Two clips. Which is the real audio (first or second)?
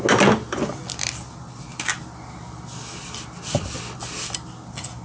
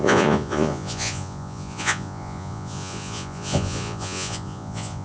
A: first